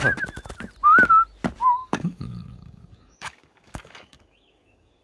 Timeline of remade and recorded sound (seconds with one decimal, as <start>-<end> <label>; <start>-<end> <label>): 0.0-1.8 recorded; 1.8-5.0 remade